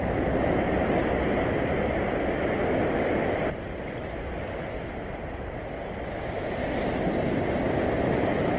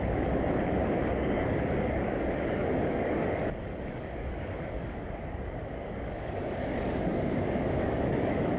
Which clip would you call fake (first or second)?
second